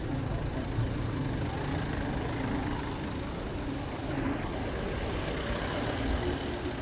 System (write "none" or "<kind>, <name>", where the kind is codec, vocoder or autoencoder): none